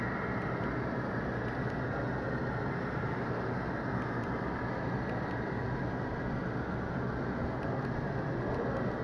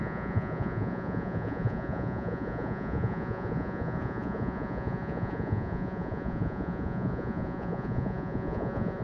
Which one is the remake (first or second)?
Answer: second